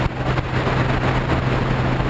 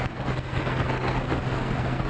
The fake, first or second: second